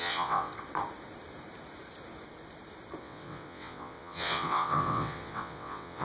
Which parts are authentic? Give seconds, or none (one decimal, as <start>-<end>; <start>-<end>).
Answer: 0.5-3.0